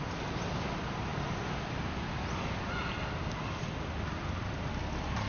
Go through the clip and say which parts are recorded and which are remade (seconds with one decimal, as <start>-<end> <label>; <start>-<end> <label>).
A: 0.0-5.3 recorded